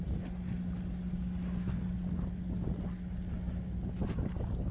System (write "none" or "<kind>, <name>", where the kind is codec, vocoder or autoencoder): none